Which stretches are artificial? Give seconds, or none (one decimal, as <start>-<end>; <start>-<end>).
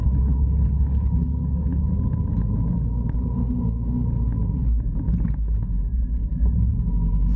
0.0-1.9